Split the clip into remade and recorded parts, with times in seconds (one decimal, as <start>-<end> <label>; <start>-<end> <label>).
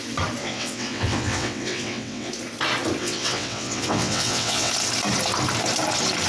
0.0-0.4 recorded; 0.4-2.3 remade; 2.3-3.0 recorded; 3.0-4.7 remade; 4.7-6.3 recorded